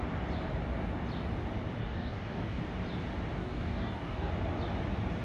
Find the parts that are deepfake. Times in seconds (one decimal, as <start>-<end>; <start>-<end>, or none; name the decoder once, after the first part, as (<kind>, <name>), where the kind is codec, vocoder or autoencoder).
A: 1.8-2.6 (codec, DAC); 3.4-4.3